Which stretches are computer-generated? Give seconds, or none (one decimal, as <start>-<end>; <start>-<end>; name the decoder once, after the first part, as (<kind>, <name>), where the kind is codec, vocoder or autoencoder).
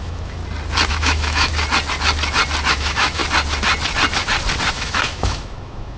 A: 0.0-0.4 (autoencoder, DAC-VAE); 0.9-1.5; 2.7-3.2; 4.7-6.0